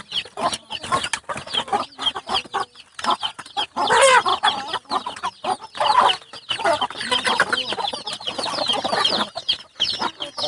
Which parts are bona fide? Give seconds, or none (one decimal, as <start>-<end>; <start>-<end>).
0.0-10.5